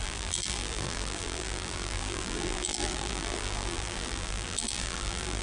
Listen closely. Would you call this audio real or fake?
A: fake